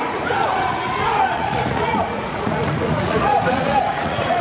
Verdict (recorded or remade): remade